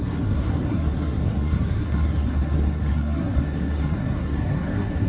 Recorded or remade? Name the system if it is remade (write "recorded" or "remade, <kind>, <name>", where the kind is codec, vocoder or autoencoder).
remade, codec, SNAC